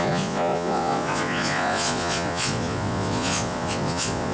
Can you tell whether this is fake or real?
fake